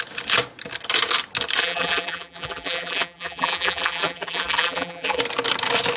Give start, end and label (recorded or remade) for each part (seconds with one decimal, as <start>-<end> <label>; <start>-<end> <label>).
0.0-1.6 recorded; 1.6-5.2 remade; 5.2-6.0 recorded